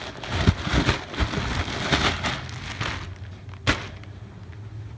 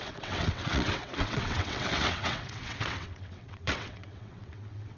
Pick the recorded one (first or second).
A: first